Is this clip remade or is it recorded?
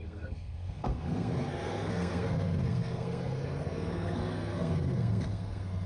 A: remade